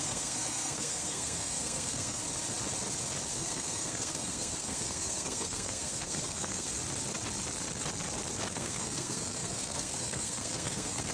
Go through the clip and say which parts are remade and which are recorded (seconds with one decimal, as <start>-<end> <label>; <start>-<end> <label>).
0.0-2.2 remade; 2.2-3.3 recorded; 3.3-6.8 remade; 6.8-8.5 recorded; 8.5-11.1 remade